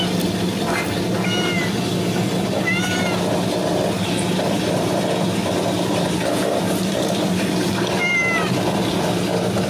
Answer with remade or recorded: recorded